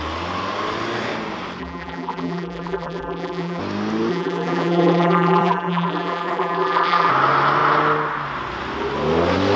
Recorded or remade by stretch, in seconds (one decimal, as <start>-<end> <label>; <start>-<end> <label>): 0.0-1.6 recorded; 1.6-3.6 remade; 3.6-4.1 recorded; 4.1-7.1 remade; 7.1-9.6 recorded